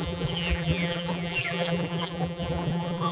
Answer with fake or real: fake